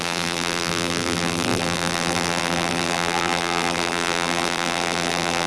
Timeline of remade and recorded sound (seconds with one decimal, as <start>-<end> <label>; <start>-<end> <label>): 0.0-5.5 remade